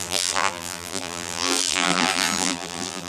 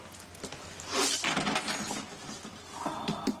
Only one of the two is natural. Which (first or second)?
second